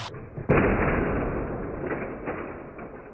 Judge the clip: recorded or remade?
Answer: recorded